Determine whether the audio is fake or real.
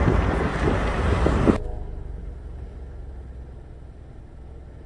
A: real